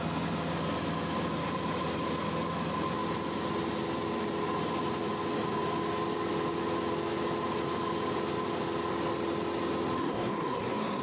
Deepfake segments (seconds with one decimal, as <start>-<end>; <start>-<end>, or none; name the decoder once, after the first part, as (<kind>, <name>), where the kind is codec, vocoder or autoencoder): 10.0-11.0 (codec, SNAC)